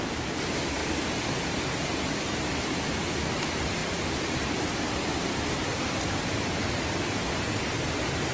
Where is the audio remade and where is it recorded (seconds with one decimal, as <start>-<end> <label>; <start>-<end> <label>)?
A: 0.0-8.3 recorded